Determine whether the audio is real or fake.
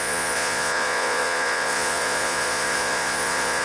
fake